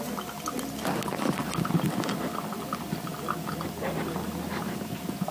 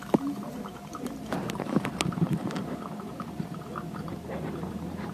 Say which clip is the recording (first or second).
first